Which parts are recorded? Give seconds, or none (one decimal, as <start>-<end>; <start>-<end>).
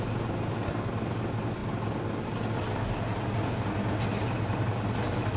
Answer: 0.0-5.4